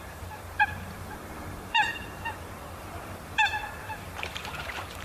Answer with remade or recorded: remade